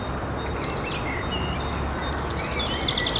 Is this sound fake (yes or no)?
no